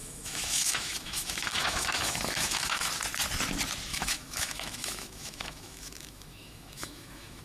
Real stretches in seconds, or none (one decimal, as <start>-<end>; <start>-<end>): 2.9-3.9